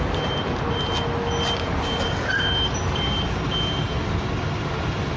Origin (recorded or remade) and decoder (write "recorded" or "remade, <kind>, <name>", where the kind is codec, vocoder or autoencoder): recorded